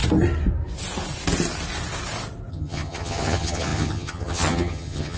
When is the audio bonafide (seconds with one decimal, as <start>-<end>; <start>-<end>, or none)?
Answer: 0.0-2.5